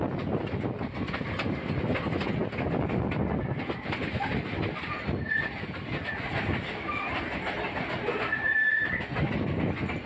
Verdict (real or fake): real